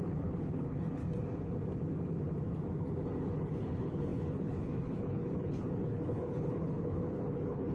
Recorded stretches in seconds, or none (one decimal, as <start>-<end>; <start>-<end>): 1.0-3.2